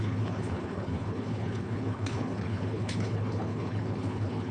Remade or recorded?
remade